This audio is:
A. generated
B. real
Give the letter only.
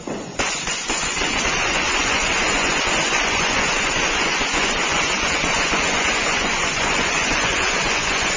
A